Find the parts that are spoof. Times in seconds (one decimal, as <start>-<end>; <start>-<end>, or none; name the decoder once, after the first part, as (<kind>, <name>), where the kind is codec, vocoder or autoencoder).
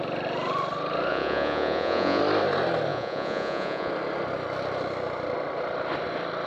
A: 1.1-2.2 (vocoder, Vocos); 2.9-3.9